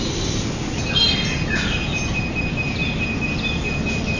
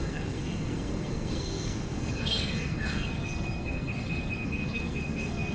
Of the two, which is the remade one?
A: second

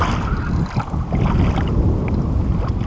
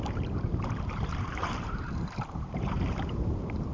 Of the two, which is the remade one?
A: second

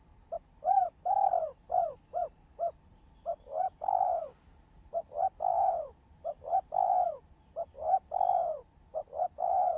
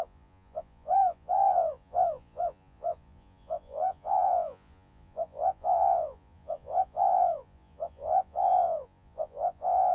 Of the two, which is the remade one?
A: second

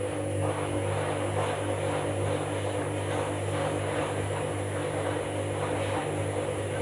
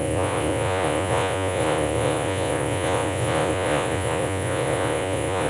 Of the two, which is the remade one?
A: second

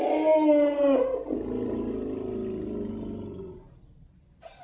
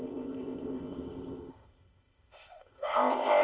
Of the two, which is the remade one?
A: second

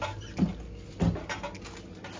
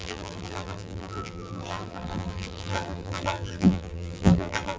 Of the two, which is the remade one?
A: second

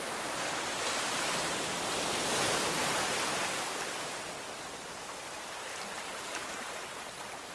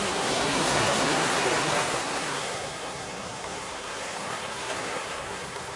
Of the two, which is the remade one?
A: second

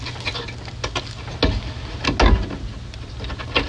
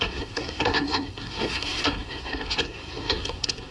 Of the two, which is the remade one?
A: second